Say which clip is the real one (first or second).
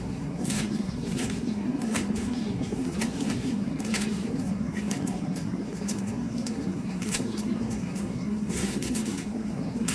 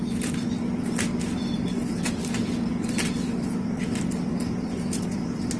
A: second